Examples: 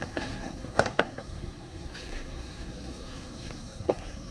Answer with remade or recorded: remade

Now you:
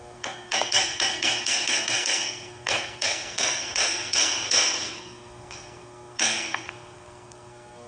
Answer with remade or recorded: remade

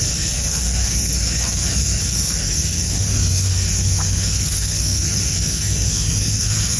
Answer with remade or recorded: remade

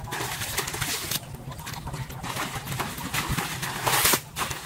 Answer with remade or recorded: recorded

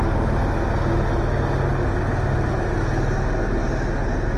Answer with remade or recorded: recorded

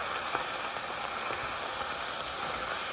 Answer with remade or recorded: recorded